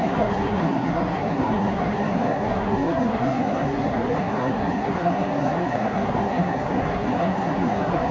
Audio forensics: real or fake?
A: fake